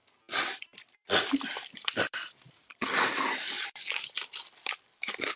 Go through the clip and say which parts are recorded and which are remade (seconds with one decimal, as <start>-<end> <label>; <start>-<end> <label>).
0.0-0.6 recorded; 0.6-5.4 remade